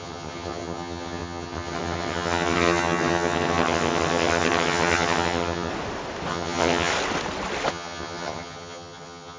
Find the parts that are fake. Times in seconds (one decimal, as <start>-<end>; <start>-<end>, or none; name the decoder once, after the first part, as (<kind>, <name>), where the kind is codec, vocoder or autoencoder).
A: 0.0-5.7 (vocoder, HiFi-GAN); 6.3-6.9; 7.7-9.4